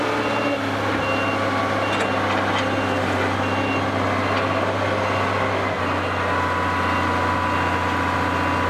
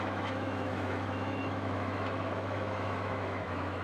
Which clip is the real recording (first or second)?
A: first